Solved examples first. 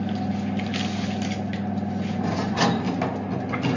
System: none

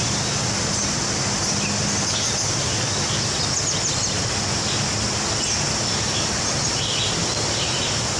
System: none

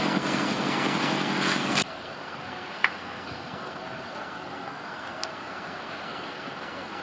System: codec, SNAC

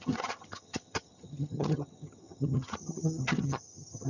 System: vocoder, HiFi-GAN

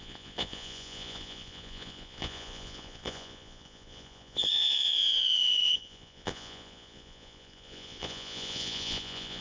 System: vocoder, Vocos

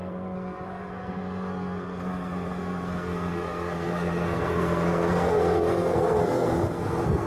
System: codec, SNAC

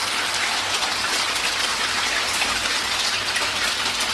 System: none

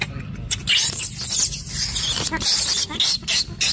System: none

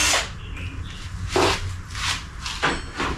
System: none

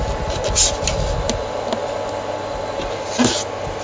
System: none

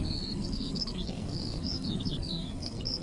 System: codec, SNAC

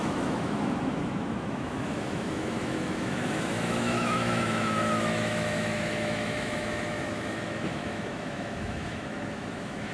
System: autoencoder, DAC-VAE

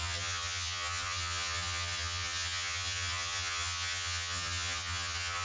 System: vocoder, HiFi-GAN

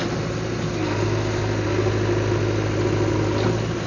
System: none